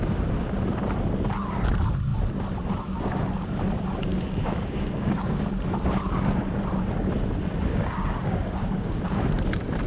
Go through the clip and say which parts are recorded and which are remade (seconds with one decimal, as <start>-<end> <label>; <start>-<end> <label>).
0.0-4.1 recorded; 4.1-5.4 remade; 5.4-7.7 recorded; 7.7-9.0 remade; 9.0-9.9 recorded

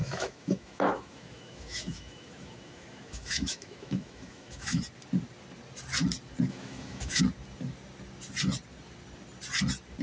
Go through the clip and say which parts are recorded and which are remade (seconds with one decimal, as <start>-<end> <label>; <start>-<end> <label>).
0.0-4.8 remade; 4.8-6.5 recorded; 6.5-7.2 remade; 7.2-10.0 recorded